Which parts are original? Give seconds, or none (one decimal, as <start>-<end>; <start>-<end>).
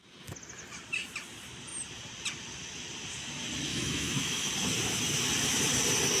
0.0-3.7; 4.5-6.2